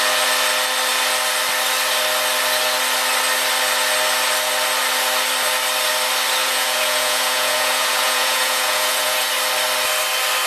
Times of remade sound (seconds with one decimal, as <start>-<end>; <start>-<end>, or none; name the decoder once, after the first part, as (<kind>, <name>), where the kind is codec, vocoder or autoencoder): 6.4-9.3 (vocoder, Vocos)